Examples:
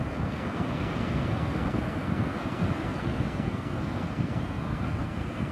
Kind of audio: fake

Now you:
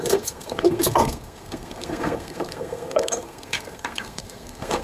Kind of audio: fake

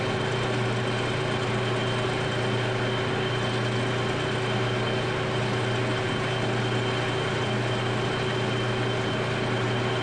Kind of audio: real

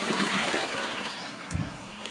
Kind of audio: fake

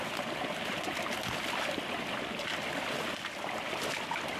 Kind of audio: real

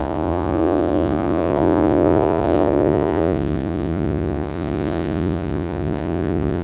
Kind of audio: fake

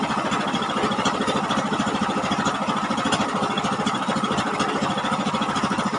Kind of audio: fake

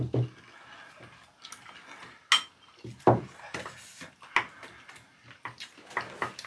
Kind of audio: real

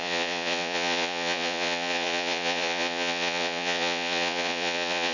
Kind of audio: fake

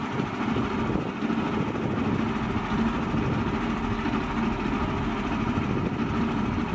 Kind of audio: real